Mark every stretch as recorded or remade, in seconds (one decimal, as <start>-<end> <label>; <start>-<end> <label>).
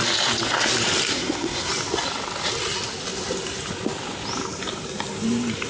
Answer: 0.0-1.1 recorded; 1.1-1.7 remade; 1.7-5.7 recorded